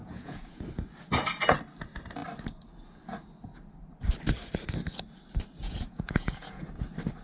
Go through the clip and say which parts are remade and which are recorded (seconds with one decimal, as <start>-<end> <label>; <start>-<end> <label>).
0.0-0.6 remade; 0.6-5.6 recorded; 5.6-6.6 remade; 6.6-7.2 recorded